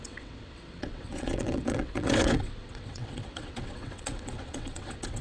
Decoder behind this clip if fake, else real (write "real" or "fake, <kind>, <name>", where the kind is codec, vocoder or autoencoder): fake, vocoder, WaveNeXt